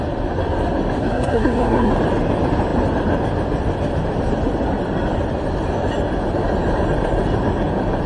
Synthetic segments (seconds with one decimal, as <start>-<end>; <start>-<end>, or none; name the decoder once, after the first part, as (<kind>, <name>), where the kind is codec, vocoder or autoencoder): 1.0-1.9 (codec, SNAC)